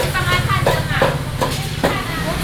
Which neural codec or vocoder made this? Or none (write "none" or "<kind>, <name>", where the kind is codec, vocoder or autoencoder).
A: none